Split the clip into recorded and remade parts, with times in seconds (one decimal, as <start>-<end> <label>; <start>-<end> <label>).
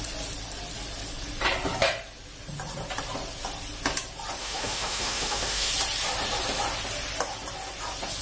0.0-4.4 recorded; 4.4-5.7 remade; 5.7-8.2 recorded